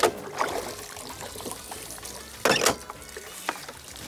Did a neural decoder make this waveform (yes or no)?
no